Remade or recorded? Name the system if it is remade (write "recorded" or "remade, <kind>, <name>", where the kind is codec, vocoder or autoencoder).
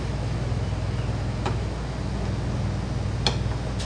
recorded